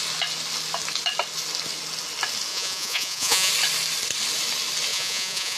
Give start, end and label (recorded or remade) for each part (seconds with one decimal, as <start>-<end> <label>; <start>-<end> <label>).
0.0-2.5 recorded; 2.5-3.5 remade; 3.5-4.9 recorded; 4.9-5.6 remade